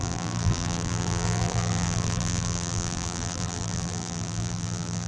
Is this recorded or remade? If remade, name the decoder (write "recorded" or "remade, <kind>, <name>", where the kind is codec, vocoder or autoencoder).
remade, vocoder, BigVGAN v2